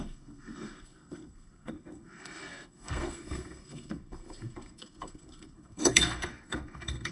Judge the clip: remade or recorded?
remade